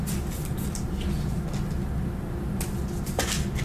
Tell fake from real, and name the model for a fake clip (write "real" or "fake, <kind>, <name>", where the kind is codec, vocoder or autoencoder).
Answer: real